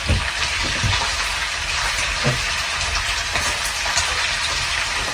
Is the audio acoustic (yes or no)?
yes